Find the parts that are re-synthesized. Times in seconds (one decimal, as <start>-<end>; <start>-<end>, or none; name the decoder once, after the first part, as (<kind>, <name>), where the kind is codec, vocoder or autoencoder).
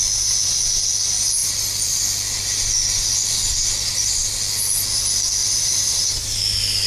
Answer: 1.4-2.0 (vocoder, BigVGAN v2); 5.4-6.4